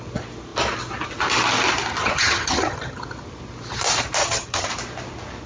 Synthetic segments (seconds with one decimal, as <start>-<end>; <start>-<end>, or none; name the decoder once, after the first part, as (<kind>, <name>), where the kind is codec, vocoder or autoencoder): 2.0-3.0 (vocoder, HiFi-GAN); 4.2-4.7